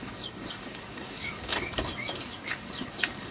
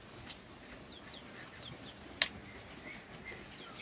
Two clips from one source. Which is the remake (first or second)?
first